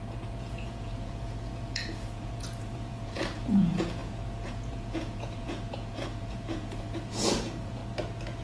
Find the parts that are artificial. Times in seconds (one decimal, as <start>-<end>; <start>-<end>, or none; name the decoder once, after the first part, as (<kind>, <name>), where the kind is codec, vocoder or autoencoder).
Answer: 0.0-7.8 (vocoder, Vocos)